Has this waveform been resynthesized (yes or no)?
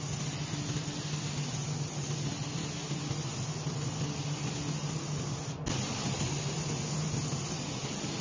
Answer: no